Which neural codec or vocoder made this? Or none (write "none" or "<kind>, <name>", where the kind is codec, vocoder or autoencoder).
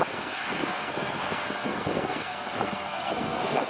codec, SNAC